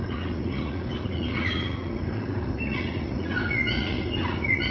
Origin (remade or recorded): remade